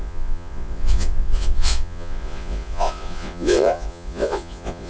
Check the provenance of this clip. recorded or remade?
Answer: remade